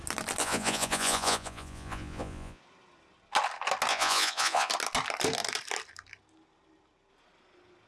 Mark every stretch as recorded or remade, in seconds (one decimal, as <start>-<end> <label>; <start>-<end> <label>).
0.0-0.4 recorded; 0.4-2.6 remade; 2.6-3.9 recorded; 3.9-4.7 remade; 4.7-7.9 recorded